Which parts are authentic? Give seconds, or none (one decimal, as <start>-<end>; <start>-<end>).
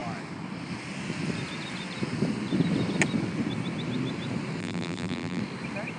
0.0-4.6; 5.4-6.0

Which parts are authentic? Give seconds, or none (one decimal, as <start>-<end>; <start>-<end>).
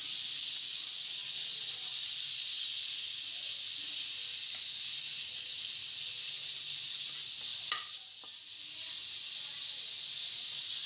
0.0-1.9; 2.7-10.9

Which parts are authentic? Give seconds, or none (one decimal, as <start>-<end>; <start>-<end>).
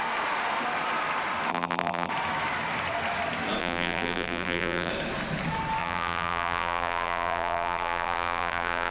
0.0-1.5; 2.1-3.6; 4.9-5.8